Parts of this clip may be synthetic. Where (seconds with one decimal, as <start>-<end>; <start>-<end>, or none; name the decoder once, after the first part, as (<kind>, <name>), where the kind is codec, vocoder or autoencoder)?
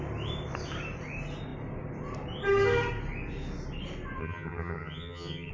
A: 4.2-5.5 (vocoder, HiFi-GAN)